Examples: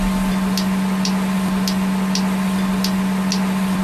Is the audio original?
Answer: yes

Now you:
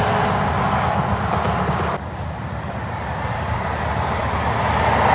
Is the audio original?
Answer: yes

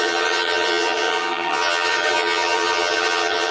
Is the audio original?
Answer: no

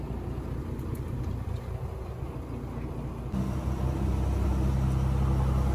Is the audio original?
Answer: yes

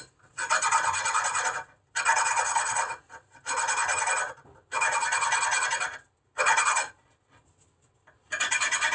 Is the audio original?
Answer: yes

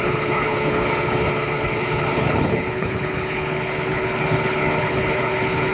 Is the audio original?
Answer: no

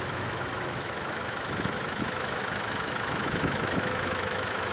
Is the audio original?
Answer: no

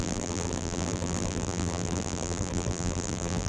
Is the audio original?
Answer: no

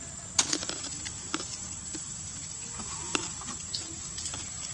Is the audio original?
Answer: yes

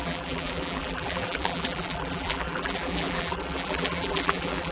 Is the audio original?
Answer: no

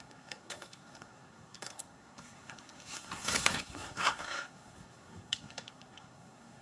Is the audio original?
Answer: no